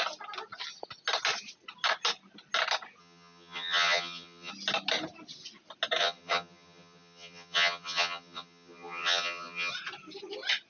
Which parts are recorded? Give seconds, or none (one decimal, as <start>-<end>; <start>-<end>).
0.0-3.0; 4.5-6.0; 9.7-10.7